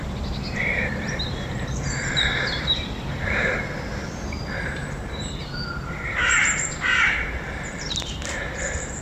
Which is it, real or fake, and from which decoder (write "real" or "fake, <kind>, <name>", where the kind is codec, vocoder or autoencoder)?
fake, vocoder, BigVGAN v2